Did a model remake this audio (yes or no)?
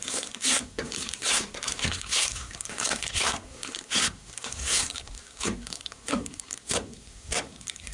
yes